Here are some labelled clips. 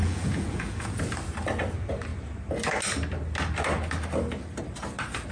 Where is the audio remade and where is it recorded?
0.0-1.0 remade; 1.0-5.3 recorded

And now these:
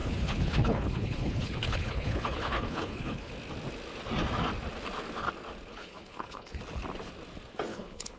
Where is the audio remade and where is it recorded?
0.0-3.3 remade; 3.3-5.7 recorded; 5.7-6.6 remade; 6.6-7.7 recorded; 7.7-8.2 remade

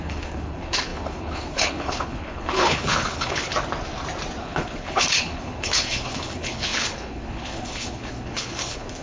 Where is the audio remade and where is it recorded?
0.0-3.5 remade; 3.5-4.4 recorded; 4.4-9.0 remade

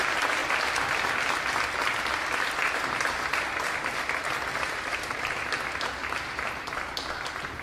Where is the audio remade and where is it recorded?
0.0-4.5 recorded; 4.5-5.4 remade; 5.4-7.6 recorded